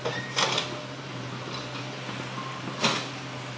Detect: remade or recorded recorded